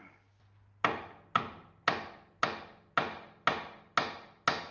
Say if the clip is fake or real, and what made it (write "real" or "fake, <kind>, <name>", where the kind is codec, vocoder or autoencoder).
real